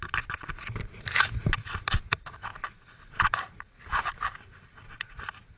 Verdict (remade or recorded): recorded